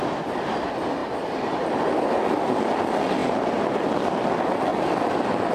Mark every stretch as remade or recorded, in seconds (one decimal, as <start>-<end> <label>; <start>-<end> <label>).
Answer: 0.0-1.0 recorded; 1.0-1.7 remade; 1.7-3.2 recorded; 3.2-3.8 remade; 3.8-5.5 recorded